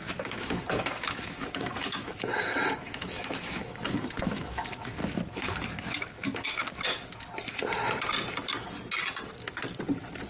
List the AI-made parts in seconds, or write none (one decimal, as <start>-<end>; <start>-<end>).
0.0-5.0